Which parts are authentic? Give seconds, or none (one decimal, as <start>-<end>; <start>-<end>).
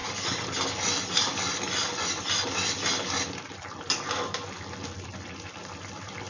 0.0-6.3